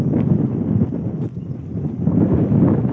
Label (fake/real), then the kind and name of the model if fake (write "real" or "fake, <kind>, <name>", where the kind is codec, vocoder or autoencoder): real